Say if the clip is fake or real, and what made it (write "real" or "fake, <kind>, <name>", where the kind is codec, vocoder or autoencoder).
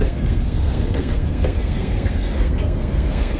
fake, codec, SNAC